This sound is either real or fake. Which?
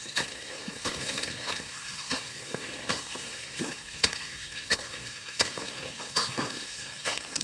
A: fake